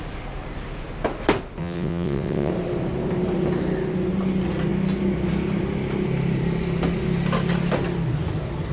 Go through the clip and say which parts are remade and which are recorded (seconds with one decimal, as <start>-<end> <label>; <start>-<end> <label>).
0.0-1.6 recorded; 1.6-2.5 remade; 2.5-8.7 recorded